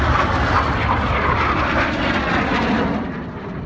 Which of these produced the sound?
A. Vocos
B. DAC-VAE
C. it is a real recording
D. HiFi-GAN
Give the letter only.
C